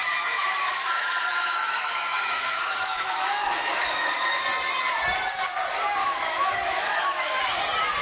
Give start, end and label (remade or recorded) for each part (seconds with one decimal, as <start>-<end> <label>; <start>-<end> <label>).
0.0-4.4 remade; 4.4-6.0 recorded; 6.0-7.4 remade; 7.4-8.0 recorded